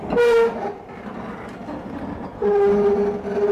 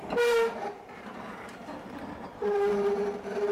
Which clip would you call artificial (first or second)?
second